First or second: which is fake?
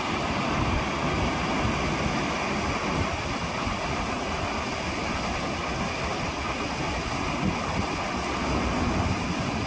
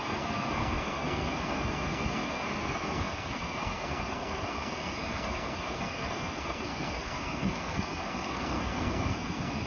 second